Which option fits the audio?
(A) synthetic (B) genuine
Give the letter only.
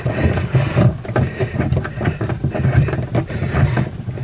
B